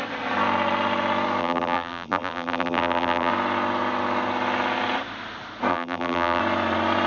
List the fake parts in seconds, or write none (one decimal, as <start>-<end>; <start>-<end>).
1.4-3.3; 5.7-6.4